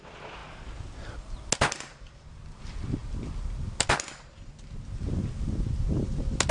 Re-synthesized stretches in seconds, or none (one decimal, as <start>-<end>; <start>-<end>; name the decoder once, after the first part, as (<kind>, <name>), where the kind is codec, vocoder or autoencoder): none

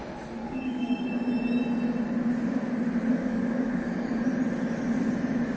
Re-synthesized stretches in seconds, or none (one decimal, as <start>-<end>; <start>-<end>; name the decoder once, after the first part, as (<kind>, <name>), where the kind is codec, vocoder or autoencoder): 0.4-1.0 (codec, DAC); 3.1-4.1

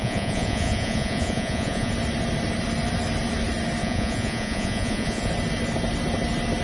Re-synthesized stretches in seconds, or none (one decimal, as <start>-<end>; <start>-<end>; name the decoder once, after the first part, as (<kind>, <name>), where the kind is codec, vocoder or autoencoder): 0.0-1.9 (vocoder, Vocos); 3.8-5.3

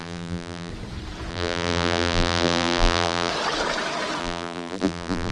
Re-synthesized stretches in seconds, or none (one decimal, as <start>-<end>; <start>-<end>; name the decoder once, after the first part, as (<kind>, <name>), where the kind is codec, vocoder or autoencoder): 0.0-0.7 (vocoder, BigVGAN v2); 1.3-3.3; 4.2-5.3

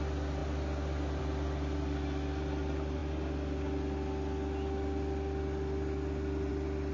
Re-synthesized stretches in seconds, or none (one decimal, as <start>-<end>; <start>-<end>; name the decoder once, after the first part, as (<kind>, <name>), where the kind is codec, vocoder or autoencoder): none

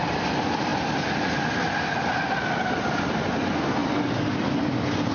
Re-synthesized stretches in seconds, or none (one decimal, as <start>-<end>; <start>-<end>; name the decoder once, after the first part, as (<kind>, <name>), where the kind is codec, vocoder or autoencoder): none

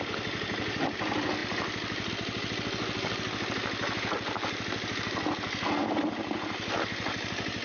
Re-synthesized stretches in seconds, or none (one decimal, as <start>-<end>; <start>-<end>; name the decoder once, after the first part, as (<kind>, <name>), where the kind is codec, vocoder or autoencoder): none